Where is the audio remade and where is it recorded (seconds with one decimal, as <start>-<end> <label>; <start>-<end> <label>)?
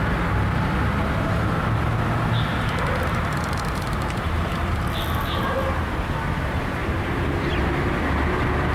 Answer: 0.0-2.5 recorded; 2.5-4.9 remade; 4.9-6.8 recorded; 6.8-7.5 remade; 7.5-8.7 recorded